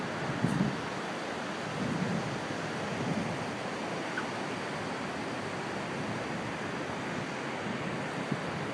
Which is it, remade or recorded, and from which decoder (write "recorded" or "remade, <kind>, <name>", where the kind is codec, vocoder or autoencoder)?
recorded